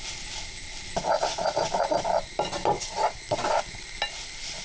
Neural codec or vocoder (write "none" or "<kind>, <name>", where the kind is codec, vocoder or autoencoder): none